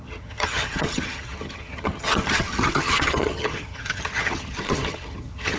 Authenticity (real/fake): fake